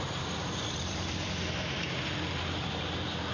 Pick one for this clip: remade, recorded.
remade